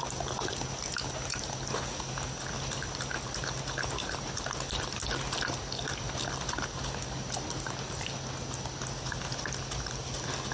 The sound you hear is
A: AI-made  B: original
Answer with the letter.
B